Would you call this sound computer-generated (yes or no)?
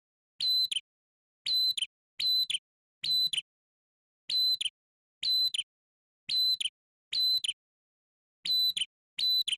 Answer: no